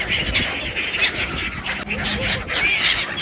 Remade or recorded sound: recorded